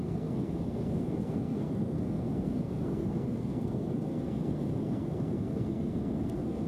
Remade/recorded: remade